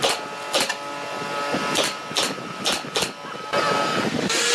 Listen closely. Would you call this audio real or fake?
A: real